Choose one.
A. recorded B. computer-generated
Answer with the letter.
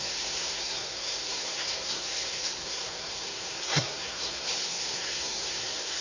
B